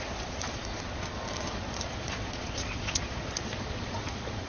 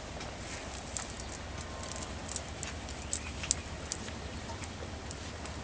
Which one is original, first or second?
second